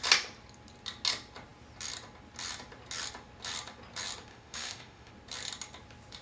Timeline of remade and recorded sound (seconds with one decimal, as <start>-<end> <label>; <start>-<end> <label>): 0.0-4.3 recorded; 4.3-5.1 remade; 5.1-6.2 recorded

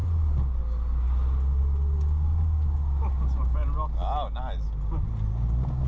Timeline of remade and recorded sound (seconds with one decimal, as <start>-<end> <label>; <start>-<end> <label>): 0.0-0.6 remade; 0.6-5.9 recorded

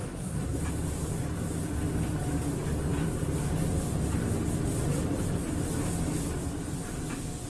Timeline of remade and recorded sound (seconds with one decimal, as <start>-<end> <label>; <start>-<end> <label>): 0.0-0.6 remade; 0.6-7.5 recorded

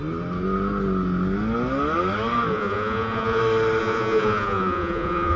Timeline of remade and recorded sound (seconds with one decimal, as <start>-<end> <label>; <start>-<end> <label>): 0.0-2.5 recorded; 2.5-3.4 remade; 3.4-3.8 recorded; 3.8-5.4 remade